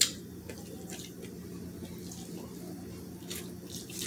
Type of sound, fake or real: real